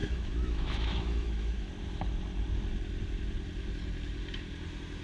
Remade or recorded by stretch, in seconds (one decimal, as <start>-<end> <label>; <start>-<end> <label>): 0.0-1.7 remade; 1.7-5.0 recorded